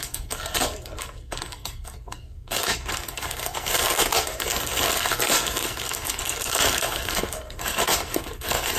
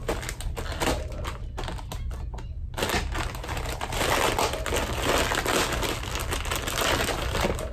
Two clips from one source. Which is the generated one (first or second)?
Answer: first